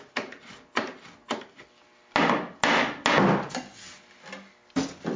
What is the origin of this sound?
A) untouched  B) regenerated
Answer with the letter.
A